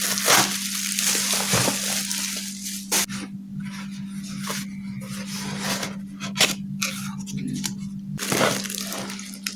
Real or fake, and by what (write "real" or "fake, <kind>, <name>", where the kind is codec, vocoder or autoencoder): real